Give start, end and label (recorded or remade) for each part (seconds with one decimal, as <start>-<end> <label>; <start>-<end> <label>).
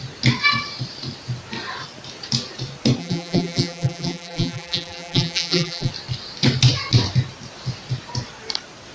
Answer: 0.0-3.0 recorded; 3.0-5.9 remade; 5.9-8.9 recorded